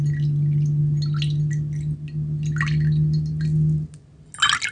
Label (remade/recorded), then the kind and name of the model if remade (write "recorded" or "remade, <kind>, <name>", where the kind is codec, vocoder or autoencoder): recorded